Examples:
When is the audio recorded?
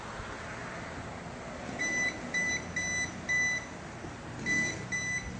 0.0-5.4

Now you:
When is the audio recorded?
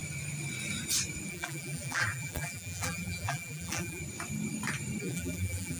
0.0-1.3; 4.0-5.0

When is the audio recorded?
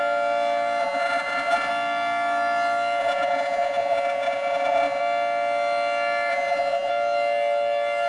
0.0-0.8; 1.7-3.0; 5.0-6.3; 6.9-8.1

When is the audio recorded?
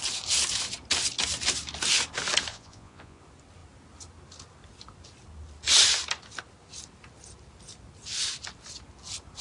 0.0-2.5; 3.2-9.4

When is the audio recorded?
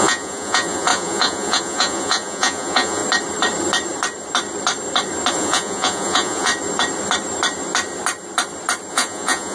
3.0-5.3; 6.5-8.9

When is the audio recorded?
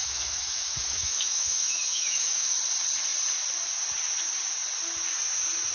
2.6-5.7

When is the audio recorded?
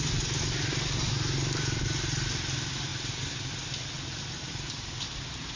0.0-5.6